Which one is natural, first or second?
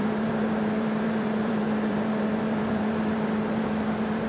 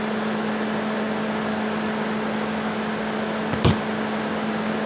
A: second